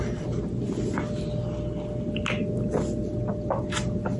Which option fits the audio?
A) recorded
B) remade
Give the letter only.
A